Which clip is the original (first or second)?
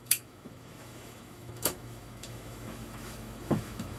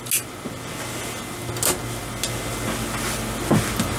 second